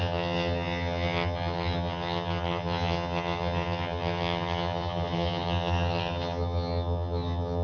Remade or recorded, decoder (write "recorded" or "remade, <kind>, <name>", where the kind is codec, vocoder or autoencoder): remade, vocoder, HiFi-GAN